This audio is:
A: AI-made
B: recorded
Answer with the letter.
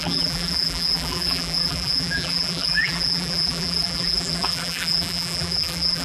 A